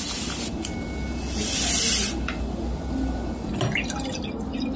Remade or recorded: recorded